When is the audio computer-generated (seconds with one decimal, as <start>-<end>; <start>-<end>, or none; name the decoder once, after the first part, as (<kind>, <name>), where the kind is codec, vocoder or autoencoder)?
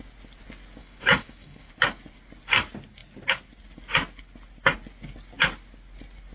0.8-1.7 (autoencoder, DAC-VAE)